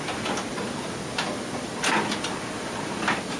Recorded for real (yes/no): yes